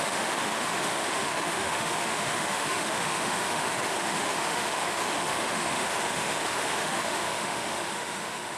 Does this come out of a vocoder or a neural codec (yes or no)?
yes